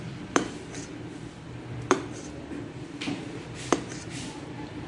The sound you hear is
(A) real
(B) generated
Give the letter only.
B